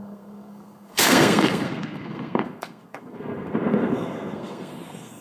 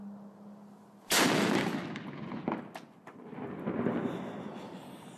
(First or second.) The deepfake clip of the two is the first